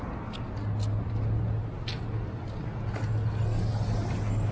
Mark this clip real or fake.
real